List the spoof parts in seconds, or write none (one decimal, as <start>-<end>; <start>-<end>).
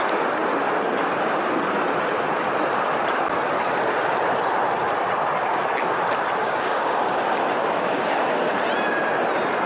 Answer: 6.4-7.0; 7.6-8.2